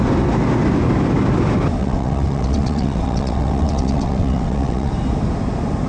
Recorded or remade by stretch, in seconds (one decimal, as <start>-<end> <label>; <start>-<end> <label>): 0.0-1.8 recorded; 1.8-4.9 remade; 4.9-5.9 recorded